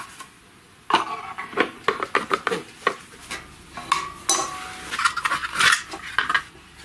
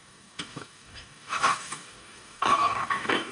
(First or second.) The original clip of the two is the first